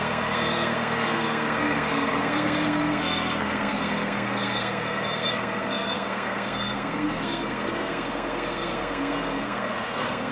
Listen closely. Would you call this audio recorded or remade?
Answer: remade